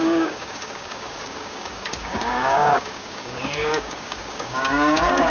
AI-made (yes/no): yes